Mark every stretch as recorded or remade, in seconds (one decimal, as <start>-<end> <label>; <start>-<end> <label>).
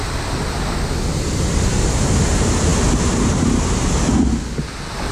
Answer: 0.0-5.1 recorded